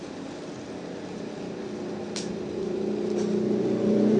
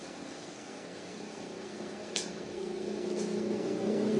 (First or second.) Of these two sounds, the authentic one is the first